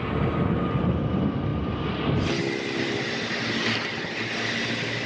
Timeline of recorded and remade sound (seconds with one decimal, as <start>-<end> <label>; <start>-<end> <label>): 0.0-5.1 recorded